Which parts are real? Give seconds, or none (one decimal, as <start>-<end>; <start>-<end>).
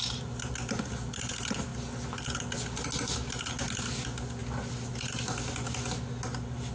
0.0-6.7